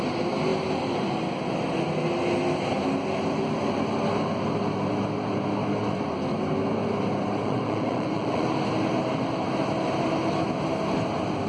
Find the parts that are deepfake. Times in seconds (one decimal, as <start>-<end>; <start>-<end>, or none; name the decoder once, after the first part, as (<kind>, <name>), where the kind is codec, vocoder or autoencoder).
7.4-8.5 (vocoder, Vocos)